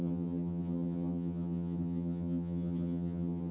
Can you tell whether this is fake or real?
fake